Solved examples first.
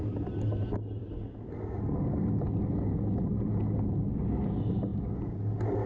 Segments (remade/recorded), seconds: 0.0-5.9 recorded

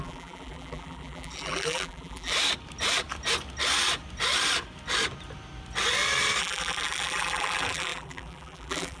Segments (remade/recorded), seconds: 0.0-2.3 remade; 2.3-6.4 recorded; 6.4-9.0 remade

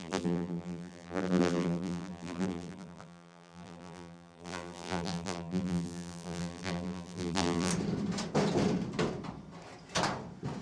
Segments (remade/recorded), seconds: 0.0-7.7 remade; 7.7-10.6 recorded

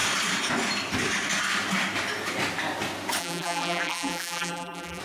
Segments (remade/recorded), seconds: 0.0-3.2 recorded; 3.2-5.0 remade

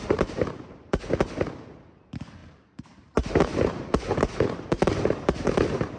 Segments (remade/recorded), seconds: 0.0-1.0 remade; 1.0-2.4 recorded; 2.4-5.5 remade; 5.5-6.0 recorded

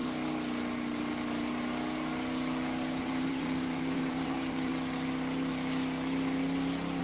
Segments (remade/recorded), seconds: 0.0-3.0 recorded; 3.0-4.7 remade; 4.7-7.0 recorded

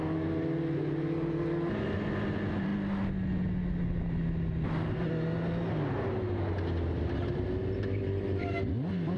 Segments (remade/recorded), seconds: 0.0-9.2 recorded

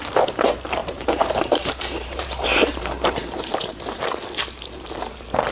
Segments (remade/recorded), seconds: 0.0-0.8 recorded; 0.8-4.1 remade; 4.1-5.5 recorded